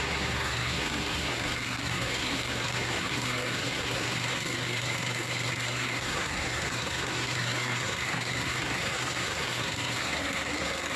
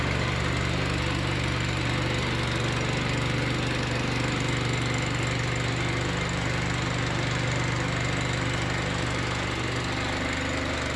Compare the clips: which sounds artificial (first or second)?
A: first